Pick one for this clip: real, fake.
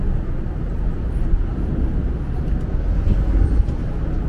real